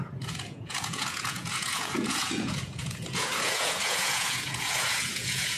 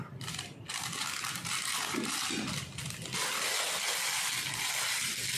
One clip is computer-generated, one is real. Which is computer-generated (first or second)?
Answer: first